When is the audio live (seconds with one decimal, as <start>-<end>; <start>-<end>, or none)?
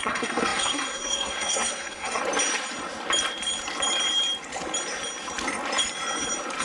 2.2-6.6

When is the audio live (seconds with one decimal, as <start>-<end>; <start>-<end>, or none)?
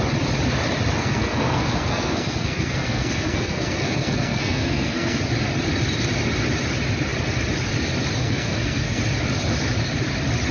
0.0-1.0; 5.2-8.2; 9.0-10.5